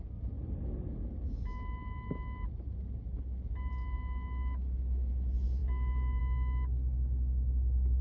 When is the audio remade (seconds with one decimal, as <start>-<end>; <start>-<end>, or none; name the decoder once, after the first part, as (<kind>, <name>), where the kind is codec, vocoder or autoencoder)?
none